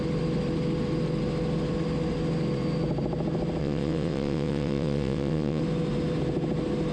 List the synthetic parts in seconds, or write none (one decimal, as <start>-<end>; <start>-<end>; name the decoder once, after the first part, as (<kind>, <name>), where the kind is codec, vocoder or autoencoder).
3.6-5.6 (vocoder, WaveNeXt)